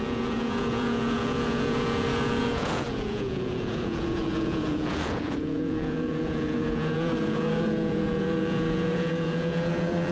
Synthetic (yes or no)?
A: yes